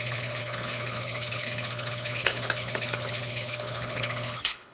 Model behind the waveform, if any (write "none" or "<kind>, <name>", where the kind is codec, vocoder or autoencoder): codec, HILCodec